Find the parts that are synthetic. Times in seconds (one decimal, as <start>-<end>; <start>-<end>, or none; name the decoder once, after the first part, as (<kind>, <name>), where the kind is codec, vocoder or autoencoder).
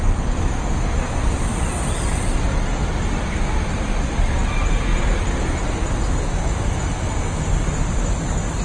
1.5-2.2 (vocoder, BigVGAN v2); 2.8-4.5; 4.9-5.6